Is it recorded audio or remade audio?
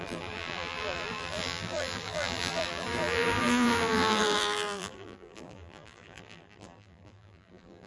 remade